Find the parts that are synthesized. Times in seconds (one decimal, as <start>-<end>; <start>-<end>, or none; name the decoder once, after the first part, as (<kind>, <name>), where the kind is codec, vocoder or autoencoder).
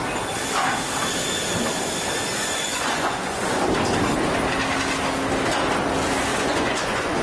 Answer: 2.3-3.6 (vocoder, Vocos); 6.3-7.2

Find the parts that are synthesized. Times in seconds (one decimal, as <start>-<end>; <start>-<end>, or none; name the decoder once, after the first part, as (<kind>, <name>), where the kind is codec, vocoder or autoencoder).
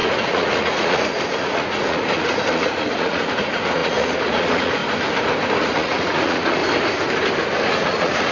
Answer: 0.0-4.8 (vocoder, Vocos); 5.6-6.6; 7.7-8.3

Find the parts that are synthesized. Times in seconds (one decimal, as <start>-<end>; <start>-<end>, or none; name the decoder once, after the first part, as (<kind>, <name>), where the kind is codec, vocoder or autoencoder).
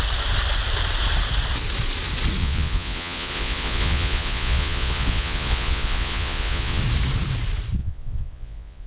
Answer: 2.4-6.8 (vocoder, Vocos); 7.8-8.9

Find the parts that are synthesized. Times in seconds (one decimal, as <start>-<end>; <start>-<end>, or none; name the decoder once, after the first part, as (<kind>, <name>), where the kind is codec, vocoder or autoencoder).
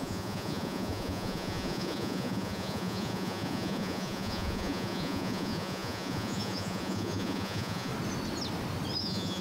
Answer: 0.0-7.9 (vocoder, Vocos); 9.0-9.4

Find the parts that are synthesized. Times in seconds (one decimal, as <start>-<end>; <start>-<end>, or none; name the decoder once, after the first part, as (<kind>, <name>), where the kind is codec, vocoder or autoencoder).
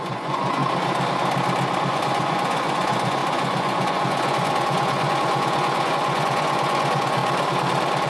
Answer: 0.0-0.6 (vocoder, Vocos); 1.9-7.2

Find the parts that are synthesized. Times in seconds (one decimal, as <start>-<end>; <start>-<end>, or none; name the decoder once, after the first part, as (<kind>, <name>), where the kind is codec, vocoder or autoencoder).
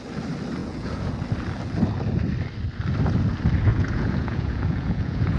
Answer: 0.6-1.1 (vocoder, Vocos); 3.7-5.4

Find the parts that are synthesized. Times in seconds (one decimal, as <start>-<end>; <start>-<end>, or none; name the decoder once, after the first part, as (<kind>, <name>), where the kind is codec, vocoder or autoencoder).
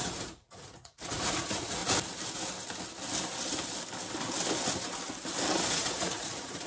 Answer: 0.0-1.8 (vocoder, Vocos); 5.7-6.7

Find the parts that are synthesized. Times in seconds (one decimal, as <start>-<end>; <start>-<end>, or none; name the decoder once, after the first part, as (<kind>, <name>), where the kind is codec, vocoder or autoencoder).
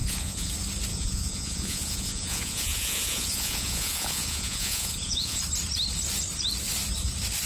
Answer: 0.0-0.5 (vocoder, Vocos); 0.9-5.4